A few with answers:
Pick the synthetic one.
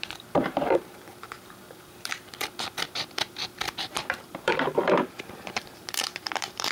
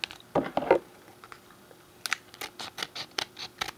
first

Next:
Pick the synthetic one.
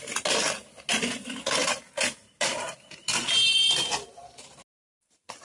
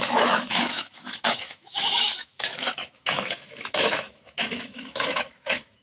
second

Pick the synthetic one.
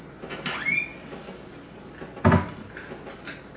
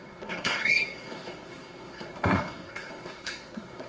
second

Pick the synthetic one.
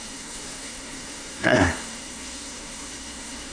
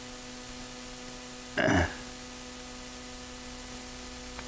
first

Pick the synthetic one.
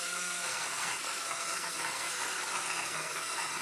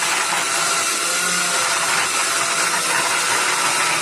first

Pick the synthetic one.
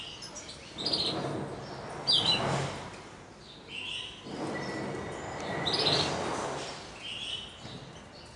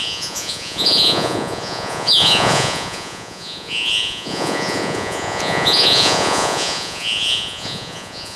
second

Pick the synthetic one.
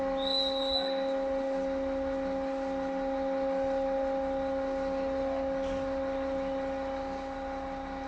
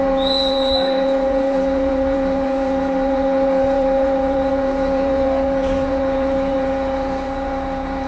second